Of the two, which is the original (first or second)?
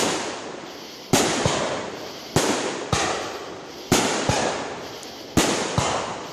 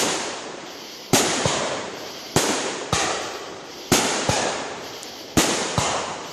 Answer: first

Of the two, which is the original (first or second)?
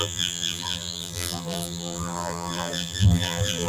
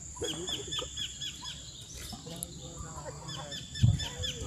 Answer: second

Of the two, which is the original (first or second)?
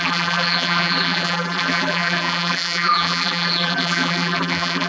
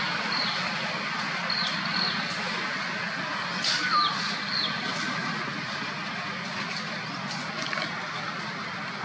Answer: second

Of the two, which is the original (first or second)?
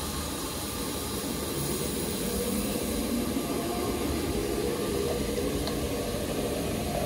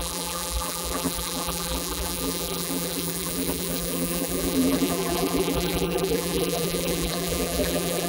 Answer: first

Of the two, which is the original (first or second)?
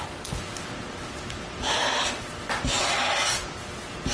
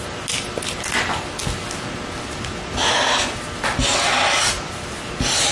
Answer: second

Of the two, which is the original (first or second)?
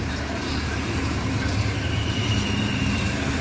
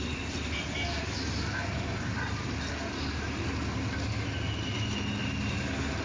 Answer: second